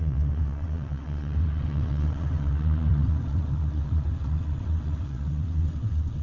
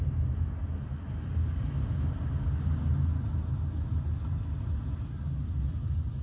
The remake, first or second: first